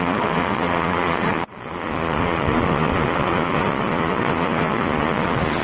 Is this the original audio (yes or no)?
no